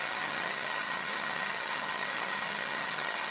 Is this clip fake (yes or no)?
yes